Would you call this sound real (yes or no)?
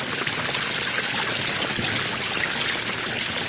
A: yes